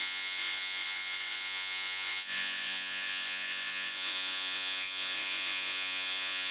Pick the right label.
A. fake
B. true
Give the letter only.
A